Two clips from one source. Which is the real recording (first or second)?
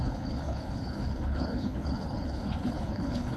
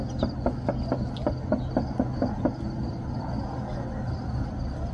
second